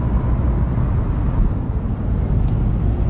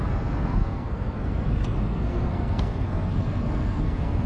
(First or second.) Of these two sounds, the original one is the first